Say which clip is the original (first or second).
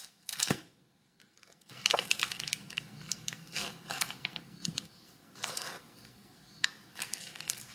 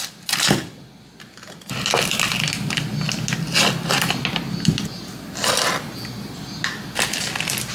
second